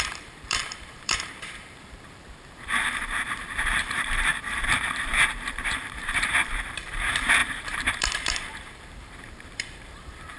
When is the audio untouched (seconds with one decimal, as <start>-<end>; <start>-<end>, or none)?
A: none